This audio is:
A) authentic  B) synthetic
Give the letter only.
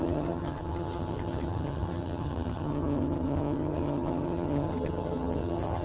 B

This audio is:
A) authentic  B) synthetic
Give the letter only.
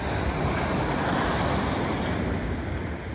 A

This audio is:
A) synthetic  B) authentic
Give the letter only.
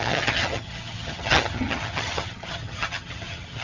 A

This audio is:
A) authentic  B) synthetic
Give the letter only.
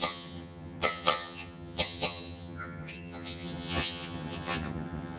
B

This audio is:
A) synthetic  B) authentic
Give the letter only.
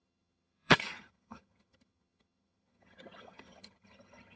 A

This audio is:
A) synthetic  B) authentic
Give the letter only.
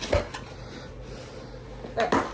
B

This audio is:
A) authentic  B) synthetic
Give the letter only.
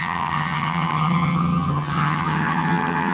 B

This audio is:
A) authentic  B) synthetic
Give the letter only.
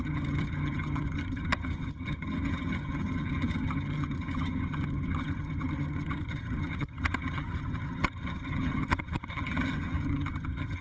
B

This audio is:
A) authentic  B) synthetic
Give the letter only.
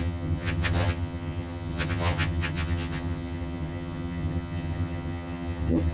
B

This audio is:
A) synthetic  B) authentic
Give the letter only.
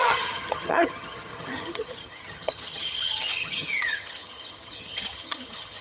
A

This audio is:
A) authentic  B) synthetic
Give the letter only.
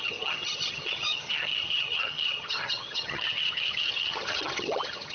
B